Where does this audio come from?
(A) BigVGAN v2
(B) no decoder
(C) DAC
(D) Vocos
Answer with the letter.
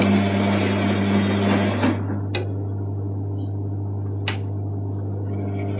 B